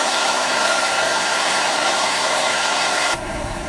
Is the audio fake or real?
fake